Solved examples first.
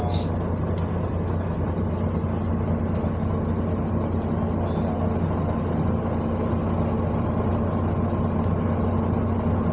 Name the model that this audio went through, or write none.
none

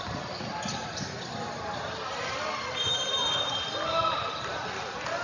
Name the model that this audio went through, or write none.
none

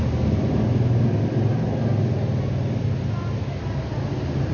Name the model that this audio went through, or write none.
none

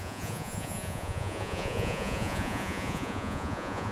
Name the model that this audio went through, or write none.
vocoder, Vocos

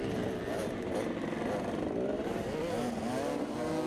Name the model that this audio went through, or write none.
none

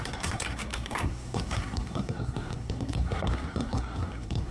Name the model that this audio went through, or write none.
codec, SNAC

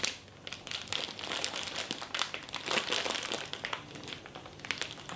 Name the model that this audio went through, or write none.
none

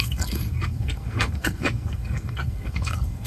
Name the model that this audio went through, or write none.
codec, SNAC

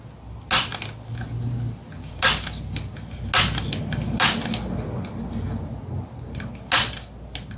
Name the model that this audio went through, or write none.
none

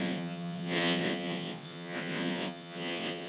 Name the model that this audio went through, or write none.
vocoder, WaveNeXt